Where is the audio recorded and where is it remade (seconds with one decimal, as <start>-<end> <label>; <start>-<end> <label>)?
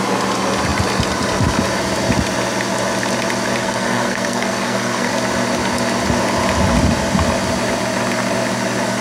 0.0-3.6 recorded; 3.6-5.1 remade; 5.1-9.0 recorded